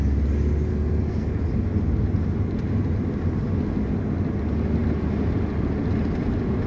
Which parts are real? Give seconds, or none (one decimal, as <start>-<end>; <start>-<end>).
0.0-0.7; 1.4-6.7